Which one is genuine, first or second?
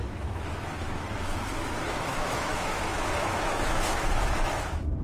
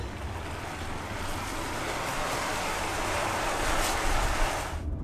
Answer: second